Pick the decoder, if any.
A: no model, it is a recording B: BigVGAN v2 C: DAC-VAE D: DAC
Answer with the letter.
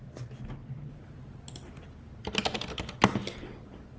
A